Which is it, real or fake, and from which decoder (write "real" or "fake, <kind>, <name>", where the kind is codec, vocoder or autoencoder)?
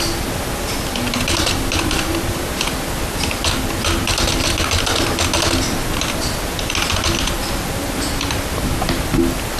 real